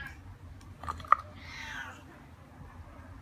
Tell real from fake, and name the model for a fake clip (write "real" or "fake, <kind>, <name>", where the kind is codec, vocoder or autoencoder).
real